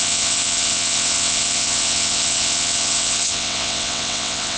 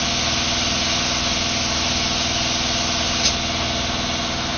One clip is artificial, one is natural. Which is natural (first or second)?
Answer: second